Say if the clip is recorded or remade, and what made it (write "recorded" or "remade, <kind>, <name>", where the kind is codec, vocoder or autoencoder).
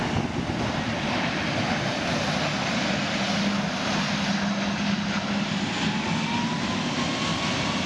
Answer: recorded